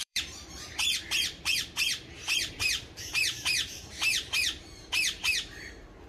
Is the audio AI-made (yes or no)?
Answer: yes